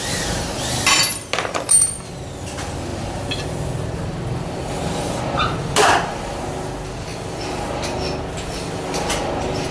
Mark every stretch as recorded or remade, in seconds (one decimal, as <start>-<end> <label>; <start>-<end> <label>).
0.0-9.7 recorded